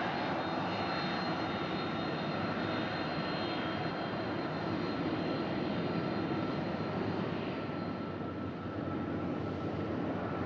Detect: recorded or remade recorded